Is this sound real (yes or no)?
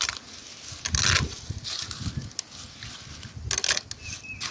yes